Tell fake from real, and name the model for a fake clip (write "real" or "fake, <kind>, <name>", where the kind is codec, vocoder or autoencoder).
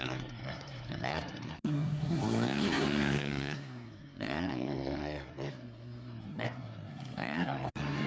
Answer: fake, codec, SNAC